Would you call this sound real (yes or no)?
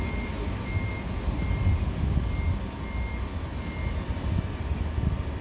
yes